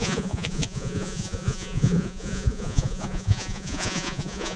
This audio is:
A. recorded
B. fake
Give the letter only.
B